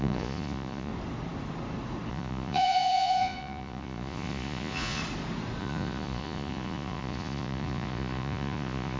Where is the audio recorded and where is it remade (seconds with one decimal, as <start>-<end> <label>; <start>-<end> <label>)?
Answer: 0.0-0.9 remade; 0.9-2.1 recorded; 2.1-5.0 remade; 5.0-5.6 recorded; 5.6-9.0 remade